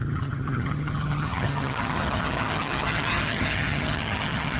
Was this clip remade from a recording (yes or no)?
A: yes